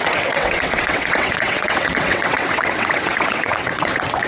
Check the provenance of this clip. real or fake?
fake